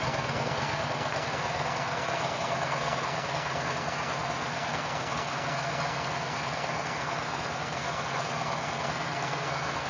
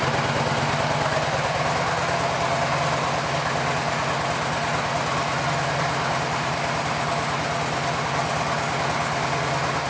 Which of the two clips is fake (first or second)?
first